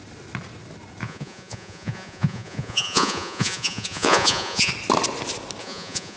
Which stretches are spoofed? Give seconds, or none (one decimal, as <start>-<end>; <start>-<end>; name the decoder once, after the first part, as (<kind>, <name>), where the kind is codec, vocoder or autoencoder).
1.0-4.7 (vocoder, Vocos); 5.6-6.2